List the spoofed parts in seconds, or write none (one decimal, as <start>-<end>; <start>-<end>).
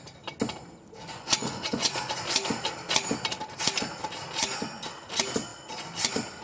1.0-2.1